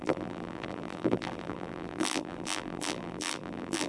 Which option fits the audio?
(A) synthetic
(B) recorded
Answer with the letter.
A